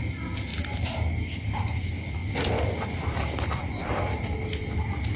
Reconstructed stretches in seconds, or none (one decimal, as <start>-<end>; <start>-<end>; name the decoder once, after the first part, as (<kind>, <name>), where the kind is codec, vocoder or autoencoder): none

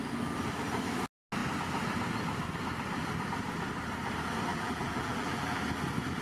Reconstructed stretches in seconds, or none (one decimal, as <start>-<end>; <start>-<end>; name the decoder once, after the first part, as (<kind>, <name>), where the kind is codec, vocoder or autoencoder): 4.5-5.6 (vocoder, BigVGAN v2)

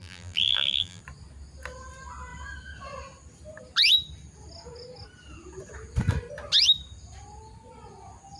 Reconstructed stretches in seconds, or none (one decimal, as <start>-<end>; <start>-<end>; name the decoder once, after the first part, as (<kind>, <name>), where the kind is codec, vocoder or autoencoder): 0.0-1.0 (vocoder, BigVGAN v2)

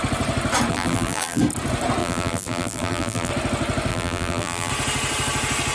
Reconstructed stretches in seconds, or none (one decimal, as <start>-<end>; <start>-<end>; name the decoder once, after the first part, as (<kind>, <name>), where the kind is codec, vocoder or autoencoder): 0.7-1.4 (vocoder, BigVGAN v2); 2.0-3.3; 3.9-4.7

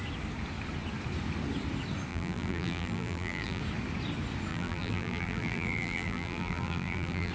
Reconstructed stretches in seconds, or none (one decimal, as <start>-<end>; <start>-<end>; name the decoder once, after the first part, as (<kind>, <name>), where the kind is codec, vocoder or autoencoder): 2.1-3.6 (vocoder, BigVGAN v2); 4.5-7.3